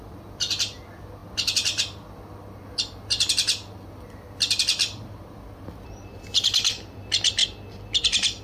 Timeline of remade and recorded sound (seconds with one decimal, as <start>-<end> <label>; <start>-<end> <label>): 0.0-8.4 recorded